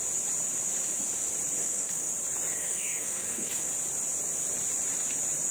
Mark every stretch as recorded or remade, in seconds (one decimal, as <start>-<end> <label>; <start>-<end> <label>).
0.0-1.6 recorded; 1.6-2.1 remade; 2.1-2.6 recorded; 2.6-3.7 remade; 3.7-5.5 recorded